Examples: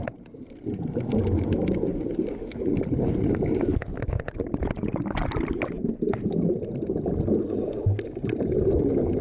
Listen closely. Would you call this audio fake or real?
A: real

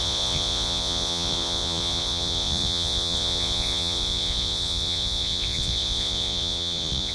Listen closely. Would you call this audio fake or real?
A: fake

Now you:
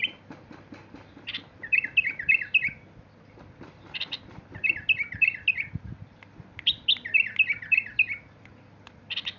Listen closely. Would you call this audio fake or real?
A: real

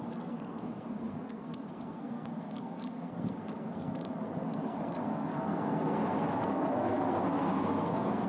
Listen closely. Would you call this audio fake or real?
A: fake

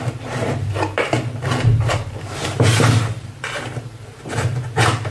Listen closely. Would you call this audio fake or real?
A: fake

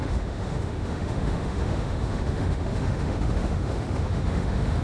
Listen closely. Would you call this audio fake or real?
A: fake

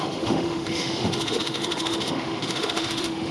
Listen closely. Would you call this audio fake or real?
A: fake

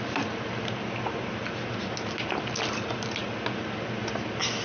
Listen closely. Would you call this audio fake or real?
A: real